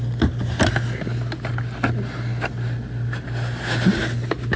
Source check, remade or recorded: recorded